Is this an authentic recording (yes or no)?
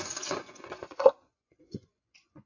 no